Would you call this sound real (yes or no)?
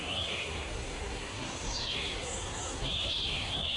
no